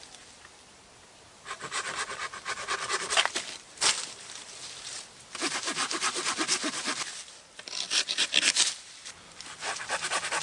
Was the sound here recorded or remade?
recorded